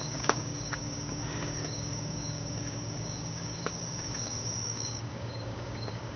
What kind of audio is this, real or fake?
fake